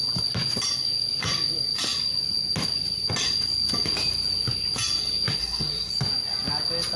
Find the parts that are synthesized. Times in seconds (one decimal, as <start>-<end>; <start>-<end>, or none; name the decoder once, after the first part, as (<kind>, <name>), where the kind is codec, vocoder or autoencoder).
5.4-5.9 (codec, SNAC)